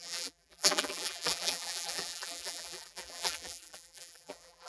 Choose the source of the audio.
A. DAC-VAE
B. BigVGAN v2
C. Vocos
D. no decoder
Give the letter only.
B